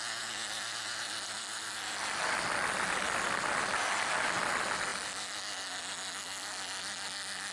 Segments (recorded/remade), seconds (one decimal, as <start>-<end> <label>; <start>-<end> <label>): 0.0-7.5 recorded